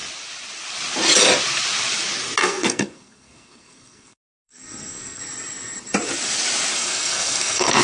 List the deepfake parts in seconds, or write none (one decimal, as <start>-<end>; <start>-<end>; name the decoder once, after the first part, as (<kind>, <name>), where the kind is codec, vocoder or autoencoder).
2.4-5.2 (codec, SNAC); 6.7-7.8